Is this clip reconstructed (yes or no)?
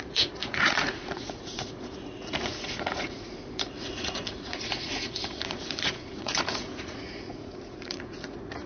yes